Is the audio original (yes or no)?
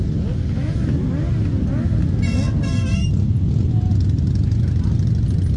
yes